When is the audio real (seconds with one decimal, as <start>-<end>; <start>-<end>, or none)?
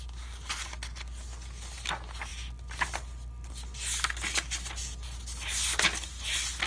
0.0-6.7